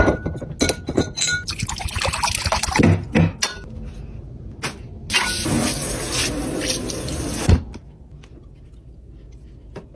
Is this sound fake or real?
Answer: real